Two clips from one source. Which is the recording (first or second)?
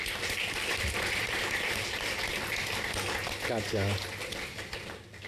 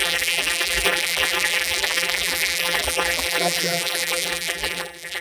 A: first